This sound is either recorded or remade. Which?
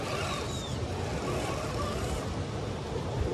recorded